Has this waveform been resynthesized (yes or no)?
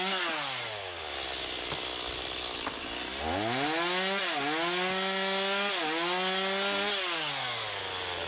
no